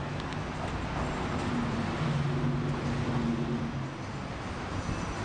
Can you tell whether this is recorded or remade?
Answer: recorded